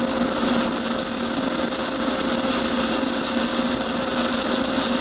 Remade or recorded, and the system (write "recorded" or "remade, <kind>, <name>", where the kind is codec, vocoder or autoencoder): recorded